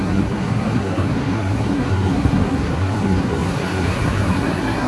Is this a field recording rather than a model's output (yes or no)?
no